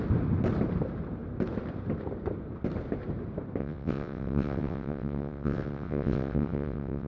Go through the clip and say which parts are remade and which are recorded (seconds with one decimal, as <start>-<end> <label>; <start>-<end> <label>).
0.0-3.6 recorded; 3.6-7.1 remade